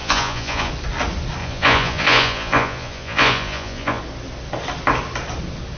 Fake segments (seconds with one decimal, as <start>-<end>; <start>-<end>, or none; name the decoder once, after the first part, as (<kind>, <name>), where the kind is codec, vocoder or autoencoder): 0.0-0.7 (vocoder, Vocos); 1.4-4.0